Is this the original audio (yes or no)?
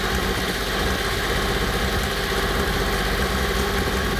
yes